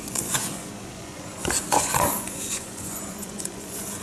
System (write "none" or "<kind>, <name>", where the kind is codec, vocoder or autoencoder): vocoder, Vocos